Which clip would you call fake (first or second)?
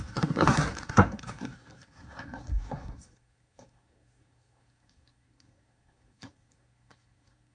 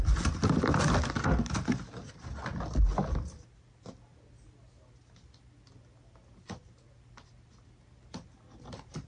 first